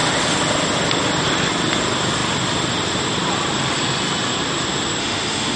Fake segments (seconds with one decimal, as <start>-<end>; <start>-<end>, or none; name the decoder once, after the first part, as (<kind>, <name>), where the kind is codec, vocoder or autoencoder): 5.0-5.6 (autoencoder, DAC-VAE)